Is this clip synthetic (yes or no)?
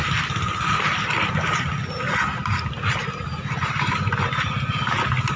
no